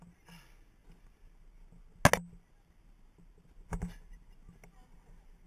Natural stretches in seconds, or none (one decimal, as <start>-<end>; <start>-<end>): 0.0-5.5